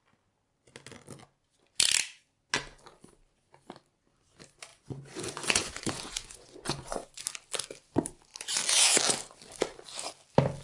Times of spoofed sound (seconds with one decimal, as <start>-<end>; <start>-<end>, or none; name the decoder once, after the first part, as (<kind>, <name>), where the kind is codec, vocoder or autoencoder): 4.7-7.2 (vocoder, Vocos)